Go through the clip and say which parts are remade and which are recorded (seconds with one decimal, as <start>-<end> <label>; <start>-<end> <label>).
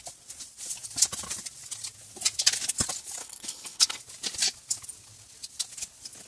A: 0.0-3.2 recorded; 3.2-4.0 remade; 4.0-6.3 recorded